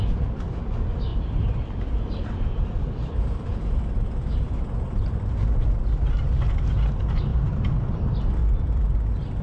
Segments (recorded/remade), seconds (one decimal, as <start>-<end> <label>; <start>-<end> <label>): 0.0-1.1 recorded; 1.1-6.1 remade; 6.1-8.4 recorded; 8.4-9.4 remade